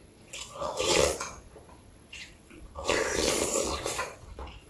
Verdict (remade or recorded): remade